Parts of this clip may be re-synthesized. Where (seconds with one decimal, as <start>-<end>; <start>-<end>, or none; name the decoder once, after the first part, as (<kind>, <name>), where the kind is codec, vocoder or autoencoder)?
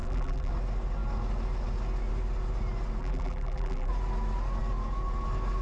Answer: 0.0-0.5 (vocoder, BigVGAN v2); 3.0-3.9